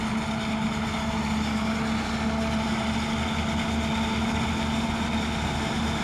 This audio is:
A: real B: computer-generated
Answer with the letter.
A